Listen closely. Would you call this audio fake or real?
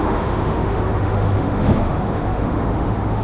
fake